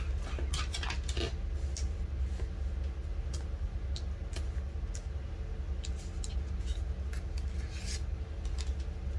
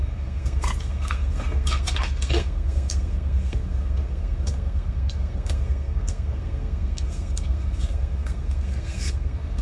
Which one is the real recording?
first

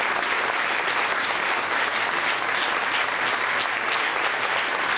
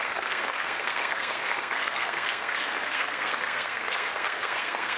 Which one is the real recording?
first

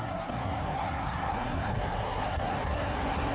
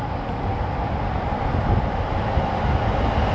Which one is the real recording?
second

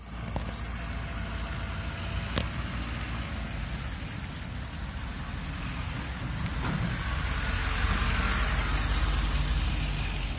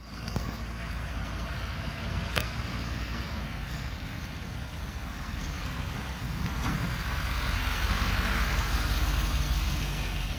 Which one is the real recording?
first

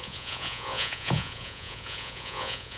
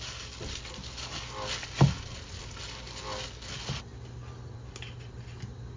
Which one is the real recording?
second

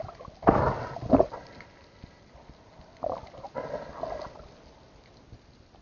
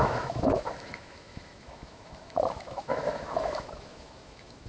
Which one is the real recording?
first